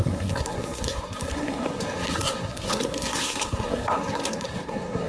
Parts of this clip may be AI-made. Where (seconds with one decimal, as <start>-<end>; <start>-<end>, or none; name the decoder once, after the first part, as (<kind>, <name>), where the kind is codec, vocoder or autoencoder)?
0.0-5.1 (codec, SNAC)